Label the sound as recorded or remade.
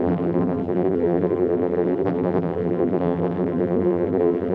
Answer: remade